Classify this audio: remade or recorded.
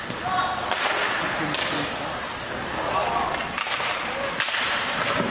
recorded